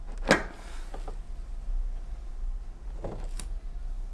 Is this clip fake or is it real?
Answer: real